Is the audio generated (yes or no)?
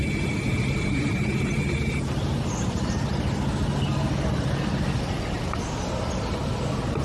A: no